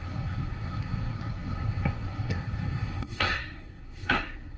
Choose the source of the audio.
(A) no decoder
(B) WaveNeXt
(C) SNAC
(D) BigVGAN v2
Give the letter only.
C